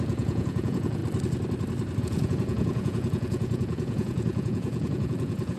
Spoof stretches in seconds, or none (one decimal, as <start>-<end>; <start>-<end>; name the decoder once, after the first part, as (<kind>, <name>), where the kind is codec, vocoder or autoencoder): 0.0-1.0 (vocoder, Vocos); 2.0-5.6